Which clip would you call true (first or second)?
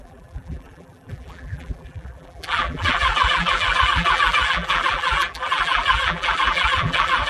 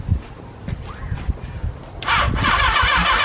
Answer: second